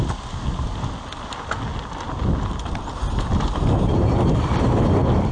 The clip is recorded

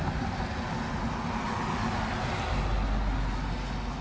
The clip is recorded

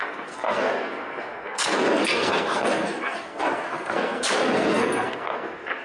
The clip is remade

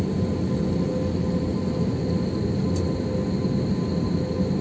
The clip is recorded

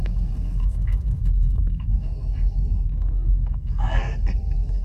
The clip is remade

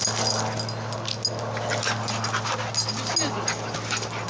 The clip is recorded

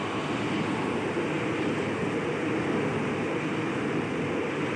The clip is recorded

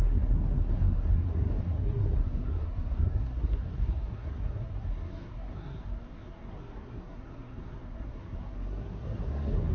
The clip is remade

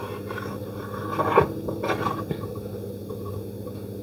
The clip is recorded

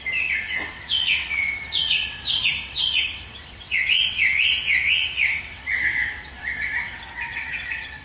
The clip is remade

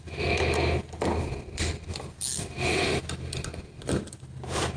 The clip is recorded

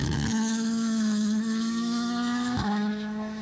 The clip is remade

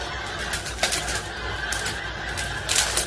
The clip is recorded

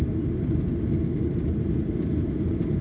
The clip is recorded